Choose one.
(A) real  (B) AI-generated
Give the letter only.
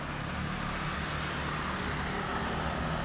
A